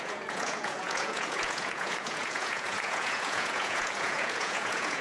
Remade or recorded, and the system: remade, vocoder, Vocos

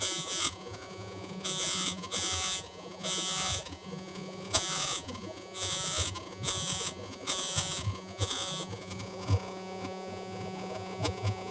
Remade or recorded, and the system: remade, vocoder, Vocos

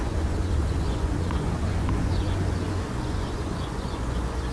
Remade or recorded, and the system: remade, vocoder, Vocos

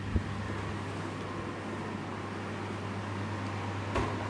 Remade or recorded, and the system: recorded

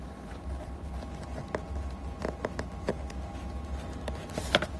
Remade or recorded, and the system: recorded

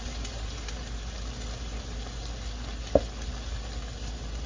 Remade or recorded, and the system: recorded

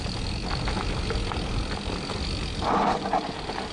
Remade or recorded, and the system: recorded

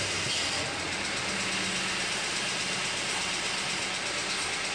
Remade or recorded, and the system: recorded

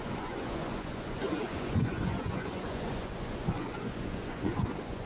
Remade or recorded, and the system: remade, vocoder, Vocos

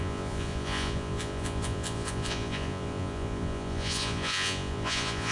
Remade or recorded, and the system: remade, vocoder, Vocos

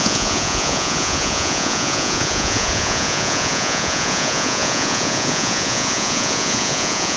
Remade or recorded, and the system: remade, vocoder, Vocos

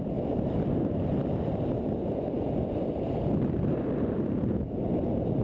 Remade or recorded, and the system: recorded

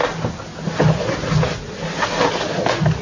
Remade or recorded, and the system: recorded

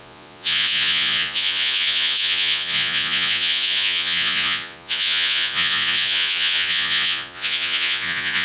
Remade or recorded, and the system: remade, vocoder, Vocos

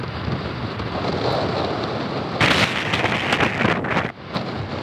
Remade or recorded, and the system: recorded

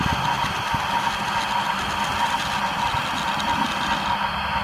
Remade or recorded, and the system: recorded